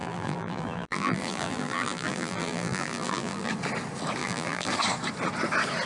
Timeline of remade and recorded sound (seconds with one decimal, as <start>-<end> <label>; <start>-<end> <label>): 0.0-3.5 remade; 3.5-4.2 recorded; 4.2-4.7 remade; 4.7-5.9 recorded